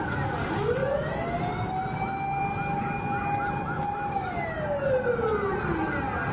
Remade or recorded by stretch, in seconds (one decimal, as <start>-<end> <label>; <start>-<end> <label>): 0.0-6.3 recorded